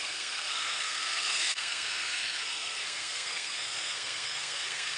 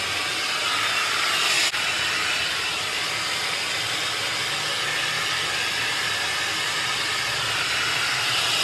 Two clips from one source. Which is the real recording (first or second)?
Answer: second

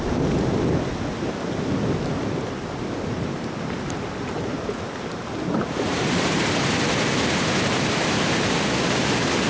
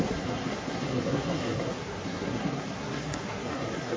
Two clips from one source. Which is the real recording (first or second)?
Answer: first